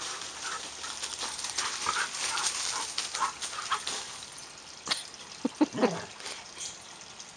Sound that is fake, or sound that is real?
real